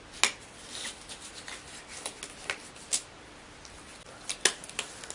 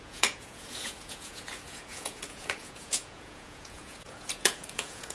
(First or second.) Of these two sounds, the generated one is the second